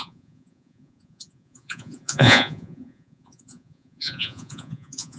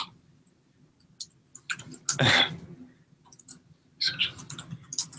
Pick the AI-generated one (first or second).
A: first